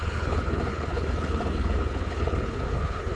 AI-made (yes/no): yes